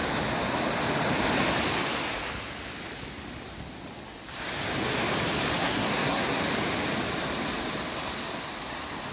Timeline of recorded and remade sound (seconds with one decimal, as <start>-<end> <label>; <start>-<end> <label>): 0.0-5.6 recorded; 5.6-6.4 remade; 6.4-9.1 recorded